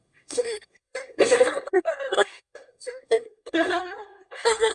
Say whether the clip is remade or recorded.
remade